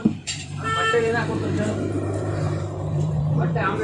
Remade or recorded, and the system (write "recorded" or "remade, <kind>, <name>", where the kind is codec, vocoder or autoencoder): remade, vocoder, BigVGAN v2